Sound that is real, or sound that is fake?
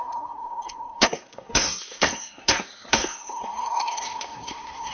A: fake